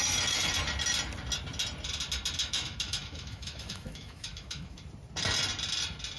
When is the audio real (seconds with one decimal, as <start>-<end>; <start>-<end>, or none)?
0.0-2.4; 4.8-6.2